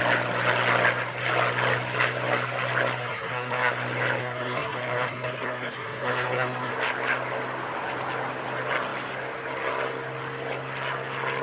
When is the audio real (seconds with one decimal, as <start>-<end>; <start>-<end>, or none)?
0.0-3.0; 3.7-4.2; 6.7-11.4